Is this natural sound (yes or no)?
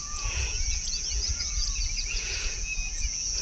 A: no